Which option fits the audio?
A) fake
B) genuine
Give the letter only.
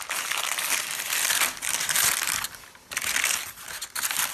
B